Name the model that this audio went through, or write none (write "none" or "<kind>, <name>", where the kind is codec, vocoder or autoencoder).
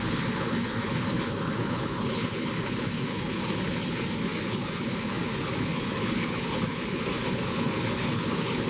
codec, HILCodec